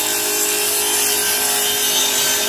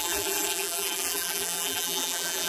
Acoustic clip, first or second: first